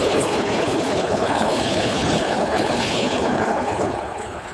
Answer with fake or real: fake